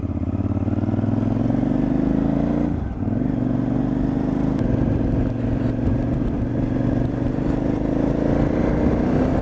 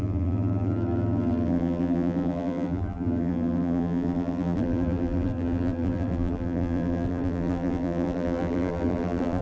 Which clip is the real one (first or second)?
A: first